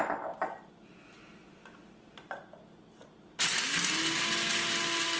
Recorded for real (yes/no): yes